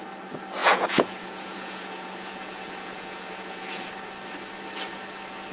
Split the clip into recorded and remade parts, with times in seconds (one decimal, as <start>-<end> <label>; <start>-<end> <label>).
0.0-0.6 recorded; 0.6-3.9 remade; 3.9-5.5 recorded